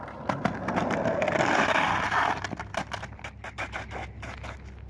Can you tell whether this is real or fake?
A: fake